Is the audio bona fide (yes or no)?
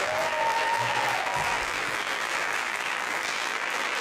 no